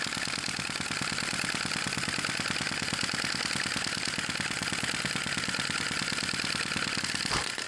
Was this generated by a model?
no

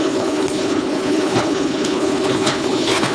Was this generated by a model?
yes